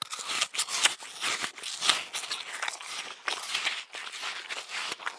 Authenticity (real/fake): real